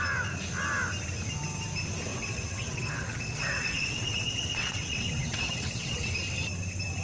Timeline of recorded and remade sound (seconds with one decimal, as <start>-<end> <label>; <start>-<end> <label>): 0.0-2.1 recorded; 2.1-6.1 remade; 6.1-7.0 recorded